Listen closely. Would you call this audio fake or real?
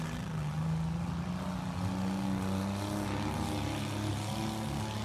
real